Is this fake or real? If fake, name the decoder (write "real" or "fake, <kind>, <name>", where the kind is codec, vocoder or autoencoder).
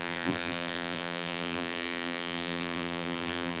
fake, vocoder, BigVGAN v2